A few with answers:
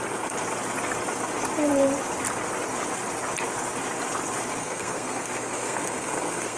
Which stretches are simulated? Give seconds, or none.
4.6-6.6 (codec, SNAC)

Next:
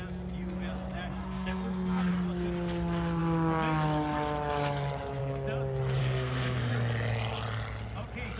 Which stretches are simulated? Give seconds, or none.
1.2-2.1 (codec, SNAC); 6.0-6.7